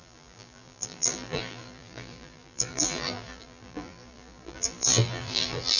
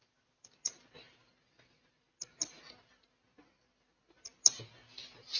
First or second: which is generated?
first